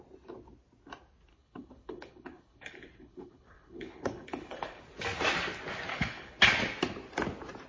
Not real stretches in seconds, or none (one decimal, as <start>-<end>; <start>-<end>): 1.3-4.8; 5.9-6.4